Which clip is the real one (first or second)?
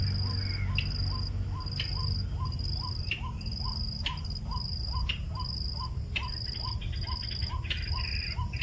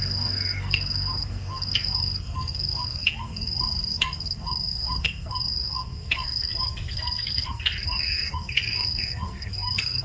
first